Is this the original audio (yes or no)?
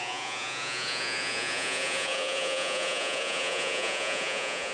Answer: no